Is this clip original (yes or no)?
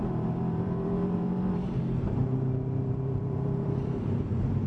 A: no